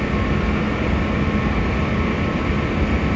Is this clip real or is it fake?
real